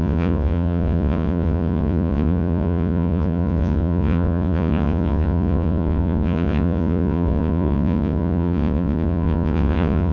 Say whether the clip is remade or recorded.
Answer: remade